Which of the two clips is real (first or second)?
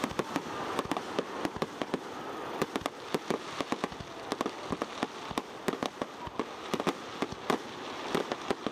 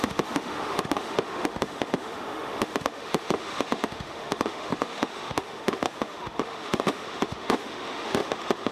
first